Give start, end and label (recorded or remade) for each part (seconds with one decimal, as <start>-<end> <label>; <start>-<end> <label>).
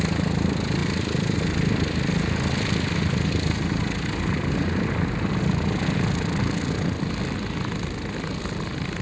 0.0-9.0 recorded